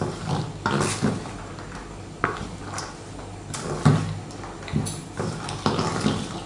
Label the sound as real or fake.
real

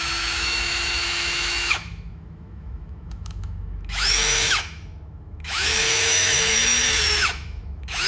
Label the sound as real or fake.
fake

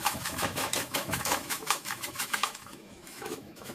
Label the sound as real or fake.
fake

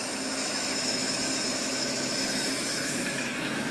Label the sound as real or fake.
fake